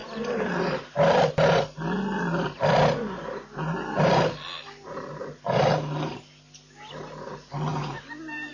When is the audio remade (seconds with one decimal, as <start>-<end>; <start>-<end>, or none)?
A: none